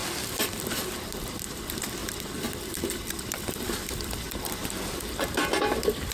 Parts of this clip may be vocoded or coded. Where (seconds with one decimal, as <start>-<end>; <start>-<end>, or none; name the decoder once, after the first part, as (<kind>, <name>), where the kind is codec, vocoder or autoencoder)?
0.0-6.1 (vocoder, BigVGAN v2)